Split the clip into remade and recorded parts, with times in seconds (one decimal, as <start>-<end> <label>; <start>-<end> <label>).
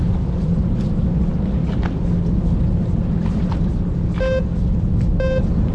0.0-5.7 recorded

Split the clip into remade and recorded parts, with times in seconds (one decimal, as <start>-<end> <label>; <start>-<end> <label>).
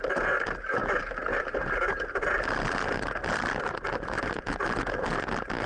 0.0-5.7 recorded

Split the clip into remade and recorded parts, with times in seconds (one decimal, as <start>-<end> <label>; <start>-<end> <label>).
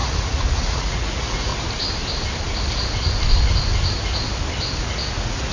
0.0-1.5 remade; 1.5-4.8 recorded; 4.8-5.5 remade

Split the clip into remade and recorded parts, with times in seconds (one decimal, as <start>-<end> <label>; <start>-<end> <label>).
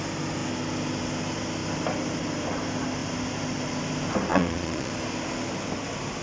0.0-4.3 recorded; 4.3-4.9 remade; 4.9-6.2 recorded